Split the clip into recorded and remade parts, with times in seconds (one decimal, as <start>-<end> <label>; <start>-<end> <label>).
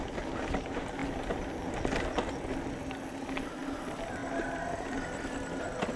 0.0-6.0 recorded